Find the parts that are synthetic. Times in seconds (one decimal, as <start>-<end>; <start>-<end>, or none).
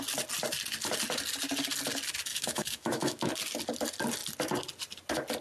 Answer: 2.3-3.3